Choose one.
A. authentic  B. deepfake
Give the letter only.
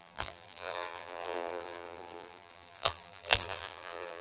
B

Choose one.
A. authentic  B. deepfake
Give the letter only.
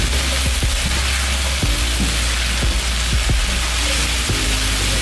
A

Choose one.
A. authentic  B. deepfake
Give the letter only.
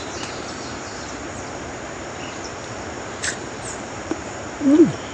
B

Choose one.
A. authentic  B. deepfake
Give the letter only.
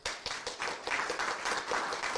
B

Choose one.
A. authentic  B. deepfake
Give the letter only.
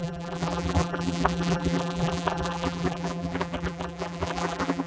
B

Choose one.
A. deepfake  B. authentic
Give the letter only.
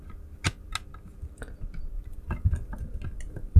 B